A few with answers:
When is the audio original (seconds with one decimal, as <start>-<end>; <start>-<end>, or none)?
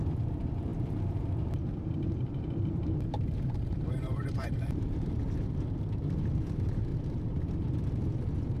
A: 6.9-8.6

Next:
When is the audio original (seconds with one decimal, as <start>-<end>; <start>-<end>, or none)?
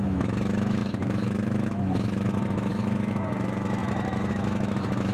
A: none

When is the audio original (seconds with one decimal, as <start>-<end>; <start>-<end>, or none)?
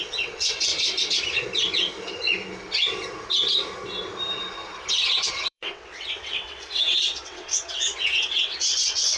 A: 0.7-5.3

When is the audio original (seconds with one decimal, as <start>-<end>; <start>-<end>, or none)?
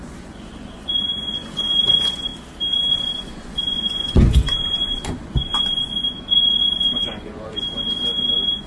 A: 2.3-2.9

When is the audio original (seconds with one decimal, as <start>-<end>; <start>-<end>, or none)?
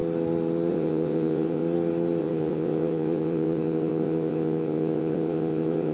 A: 0.0-0.7; 1.6-2.2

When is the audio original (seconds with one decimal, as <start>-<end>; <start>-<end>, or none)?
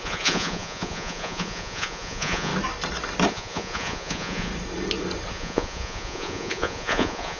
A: 2.5-3.3; 4.5-5.3